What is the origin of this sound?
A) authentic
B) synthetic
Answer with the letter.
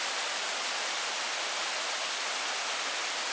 A